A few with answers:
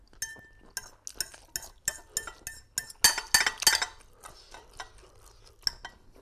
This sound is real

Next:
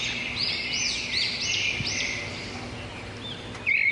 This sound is real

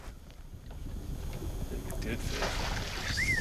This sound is real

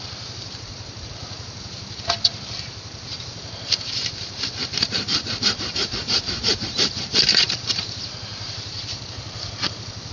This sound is fake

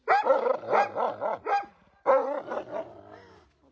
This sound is real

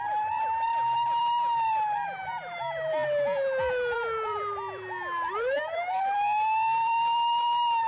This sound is fake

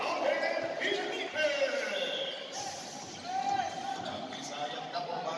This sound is real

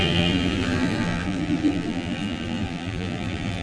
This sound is fake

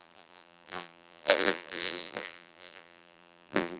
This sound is fake